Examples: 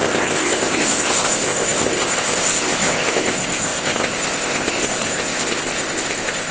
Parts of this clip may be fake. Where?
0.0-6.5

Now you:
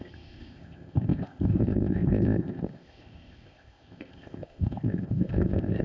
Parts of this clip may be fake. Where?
0.0-5.8

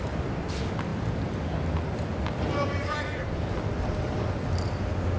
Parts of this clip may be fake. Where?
none

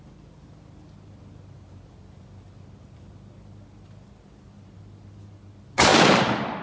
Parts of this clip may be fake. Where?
none